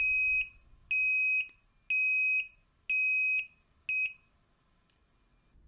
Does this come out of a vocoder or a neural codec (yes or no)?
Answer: no